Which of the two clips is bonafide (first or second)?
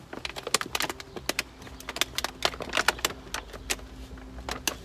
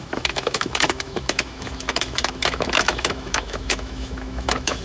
first